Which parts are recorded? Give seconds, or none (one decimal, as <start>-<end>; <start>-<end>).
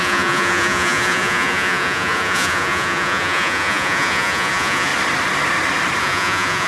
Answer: 4.9-6.0